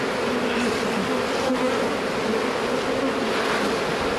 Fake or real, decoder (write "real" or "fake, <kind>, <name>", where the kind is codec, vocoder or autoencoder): real